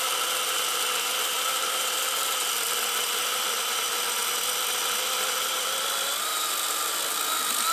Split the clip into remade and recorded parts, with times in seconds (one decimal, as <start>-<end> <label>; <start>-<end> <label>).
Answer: 0.0-1.3 recorded; 1.3-2.0 remade; 2.0-7.7 recorded